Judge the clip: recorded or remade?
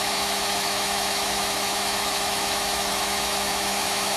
remade